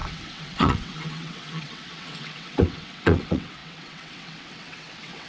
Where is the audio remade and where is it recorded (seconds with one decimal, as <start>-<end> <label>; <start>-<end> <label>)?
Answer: 0.0-5.3 remade